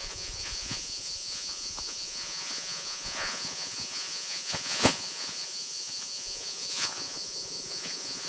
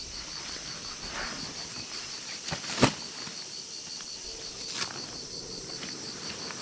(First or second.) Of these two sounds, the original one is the second